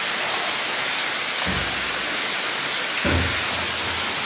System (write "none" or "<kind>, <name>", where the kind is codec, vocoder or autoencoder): none